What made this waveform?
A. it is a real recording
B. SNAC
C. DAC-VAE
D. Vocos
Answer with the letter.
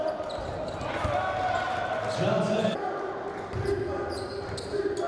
A